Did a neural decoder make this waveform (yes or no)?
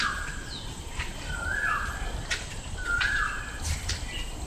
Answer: no